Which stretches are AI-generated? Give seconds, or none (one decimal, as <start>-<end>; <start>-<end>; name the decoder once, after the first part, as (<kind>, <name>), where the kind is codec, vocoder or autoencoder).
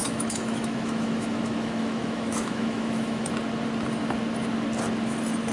0.0-3.3 (autoencoder, DAC-VAE)